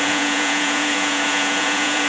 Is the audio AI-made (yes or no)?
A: yes